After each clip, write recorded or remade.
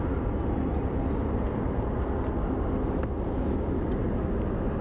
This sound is recorded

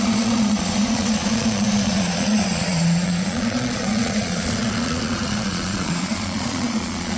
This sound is remade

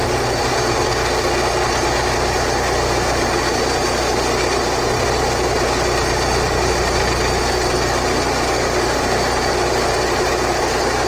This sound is recorded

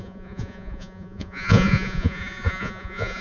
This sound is remade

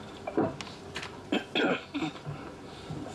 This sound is recorded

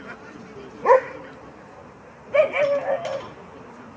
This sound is recorded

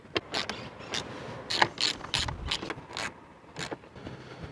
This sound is recorded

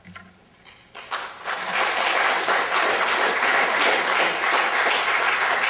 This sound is recorded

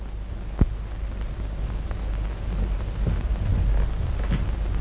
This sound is recorded